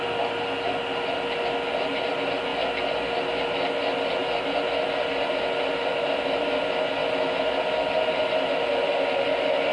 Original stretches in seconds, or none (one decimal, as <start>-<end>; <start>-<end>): 0.0-9.7